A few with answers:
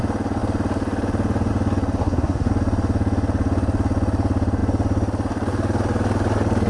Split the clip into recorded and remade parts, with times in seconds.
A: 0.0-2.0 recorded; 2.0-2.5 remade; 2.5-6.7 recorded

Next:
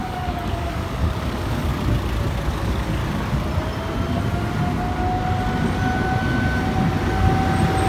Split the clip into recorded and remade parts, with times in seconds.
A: 0.0-1.7 remade; 1.7-2.5 recorded; 2.5-3.0 remade; 3.0-7.9 recorded

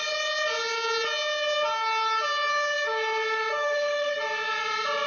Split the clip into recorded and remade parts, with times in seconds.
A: 0.0-3.5 recorded; 3.5-4.1 remade; 4.1-5.1 recorded

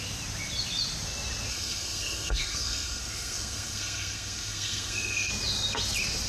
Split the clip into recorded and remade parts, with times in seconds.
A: 0.0-1.5 recorded; 1.5-5.3 remade; 5.3-6.3 recorded

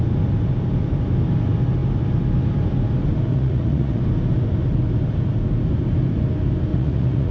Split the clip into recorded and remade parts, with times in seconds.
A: 0.0-3.3 recorded; 3.3-4.0 remade; 4.0-6.7 recorded; 6.7-7.3 remade

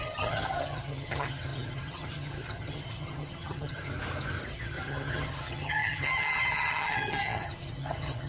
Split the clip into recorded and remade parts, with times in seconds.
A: 0.0-3.9 remade; 3.9-4.5 recorded; 4.5-8.3 remade

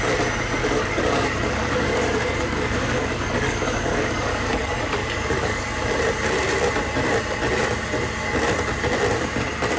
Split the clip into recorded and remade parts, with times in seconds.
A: 0.0-0.6 recorded; 0.6-5.7 remade; 5.7-9.8 recorded

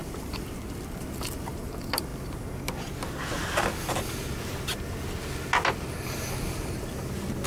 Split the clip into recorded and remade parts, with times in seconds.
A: 0.0-1.6 remade; 1.6-7.5 recorded